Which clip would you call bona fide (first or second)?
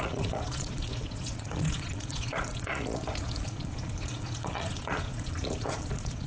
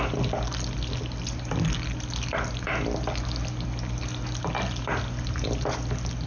second